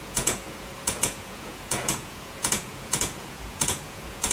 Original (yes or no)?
no